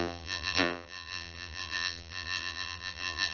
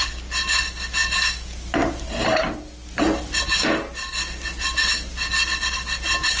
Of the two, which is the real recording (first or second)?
second